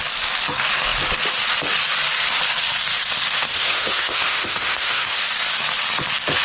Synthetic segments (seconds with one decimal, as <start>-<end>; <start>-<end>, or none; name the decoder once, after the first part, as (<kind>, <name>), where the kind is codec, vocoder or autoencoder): 3.5-5.2 (autoencoder, DAC-VAE)